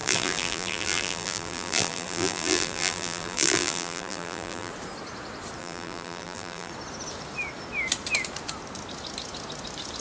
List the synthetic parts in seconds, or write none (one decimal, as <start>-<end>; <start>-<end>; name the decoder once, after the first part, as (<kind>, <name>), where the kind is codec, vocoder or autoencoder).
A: 0.0-4.7 (vocoder, BigVGAN v2); 5.6-6.7